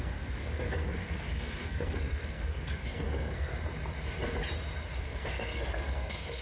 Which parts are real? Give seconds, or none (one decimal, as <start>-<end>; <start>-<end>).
3.5-5.0